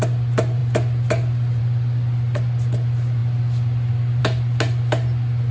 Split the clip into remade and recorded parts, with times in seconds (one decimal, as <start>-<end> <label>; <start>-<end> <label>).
0.0-5.5 recorded